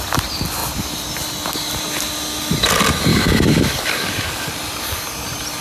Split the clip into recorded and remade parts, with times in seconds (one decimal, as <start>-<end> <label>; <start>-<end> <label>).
0.0-3.1 recorded; 3.1-4.5 remade; 4.5-5.6 recorded